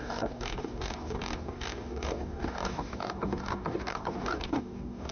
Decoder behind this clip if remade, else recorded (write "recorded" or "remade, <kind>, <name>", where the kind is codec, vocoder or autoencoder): remade, codec, DAC